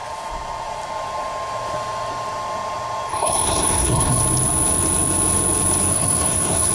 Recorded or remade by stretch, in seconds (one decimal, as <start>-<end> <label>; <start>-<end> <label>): 0.0-3.1 recorded; 3.1-4.2 remade; 4.2-5.9 recorded; 5.9-6.7 remade